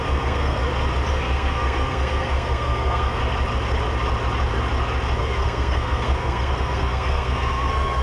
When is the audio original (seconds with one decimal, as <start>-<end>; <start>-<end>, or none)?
0.6-1.1; 3.2-5.2

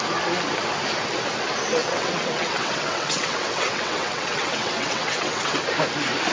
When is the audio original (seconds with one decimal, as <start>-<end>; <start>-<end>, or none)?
0.0-1.8; 5.6-6.3

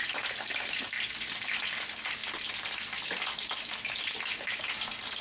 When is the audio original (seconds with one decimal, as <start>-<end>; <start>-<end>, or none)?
0.0-5.2

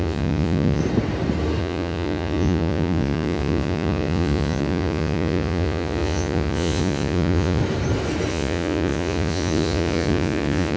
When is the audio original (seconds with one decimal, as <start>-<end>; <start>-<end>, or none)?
0.8-1.6; 7.6-8.3

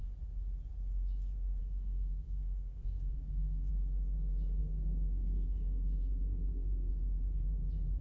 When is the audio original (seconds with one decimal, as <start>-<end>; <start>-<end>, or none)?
0.0-1.6; 3.7-4.6; 6.9-8.0

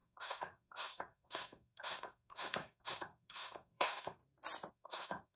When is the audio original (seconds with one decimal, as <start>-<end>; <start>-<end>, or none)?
4.2-4.7

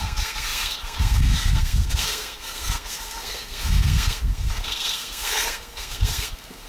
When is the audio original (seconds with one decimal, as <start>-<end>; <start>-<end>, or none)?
none

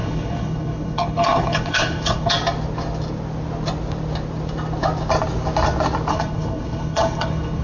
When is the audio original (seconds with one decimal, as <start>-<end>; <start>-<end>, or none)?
2.3-6.1